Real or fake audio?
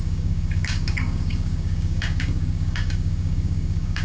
fake